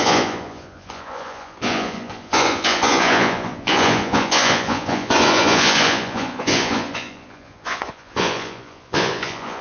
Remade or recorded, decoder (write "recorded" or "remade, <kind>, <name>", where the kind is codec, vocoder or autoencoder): remade, vocoder, Vocos